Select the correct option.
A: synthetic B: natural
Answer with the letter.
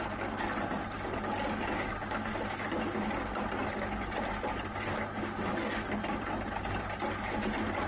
B